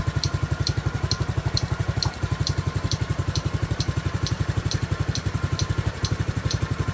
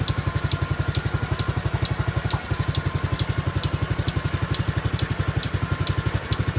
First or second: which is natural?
second